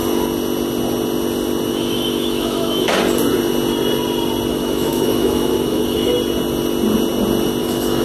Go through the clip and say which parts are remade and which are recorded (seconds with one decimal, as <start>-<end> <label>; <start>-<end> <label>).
0.0-1.7 recorded; 1.7-2.9 remade; 2.9-4.5 recorded; 4.5-6.1 remade; 6.1-7.6 recorded; 7.6-8.0 remade